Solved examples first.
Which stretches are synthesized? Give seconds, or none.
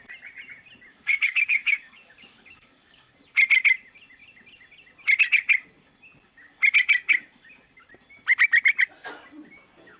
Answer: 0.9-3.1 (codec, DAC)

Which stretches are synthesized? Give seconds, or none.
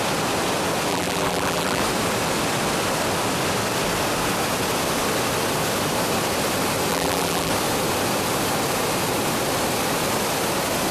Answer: 0.9-1.8 (vocoder, BigVGAN v2); 6.9-7.5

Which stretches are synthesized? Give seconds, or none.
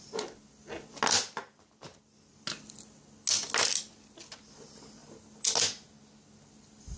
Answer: none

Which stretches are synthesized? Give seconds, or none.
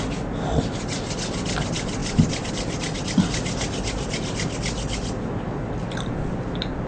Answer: none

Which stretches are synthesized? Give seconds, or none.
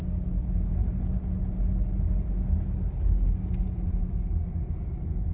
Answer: none